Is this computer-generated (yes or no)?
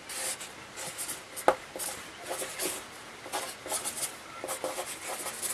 no